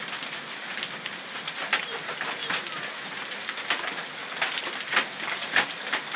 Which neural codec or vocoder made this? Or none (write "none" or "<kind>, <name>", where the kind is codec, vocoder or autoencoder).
vocoder, BigVGAN v2